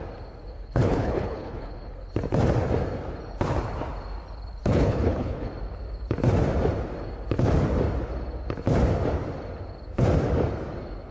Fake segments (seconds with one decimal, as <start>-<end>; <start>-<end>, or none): 0.5-2.1; 4.6-5.5